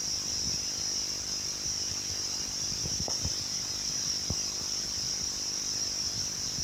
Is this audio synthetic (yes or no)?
yes